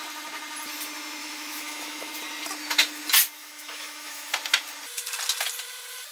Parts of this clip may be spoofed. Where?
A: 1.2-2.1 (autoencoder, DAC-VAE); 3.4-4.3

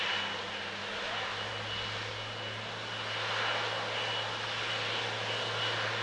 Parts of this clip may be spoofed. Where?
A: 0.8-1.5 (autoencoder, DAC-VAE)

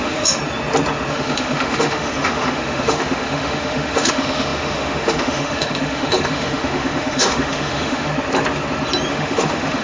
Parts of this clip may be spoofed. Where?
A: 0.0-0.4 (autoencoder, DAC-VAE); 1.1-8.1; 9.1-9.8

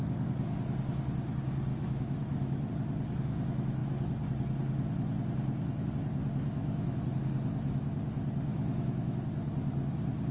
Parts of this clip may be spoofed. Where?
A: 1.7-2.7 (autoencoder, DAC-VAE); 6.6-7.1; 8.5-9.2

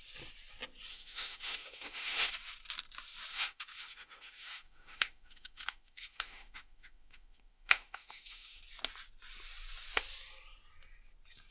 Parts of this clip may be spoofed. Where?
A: 0.9-2.3 (autoencoder, DAC-VAE); 3.3-8.6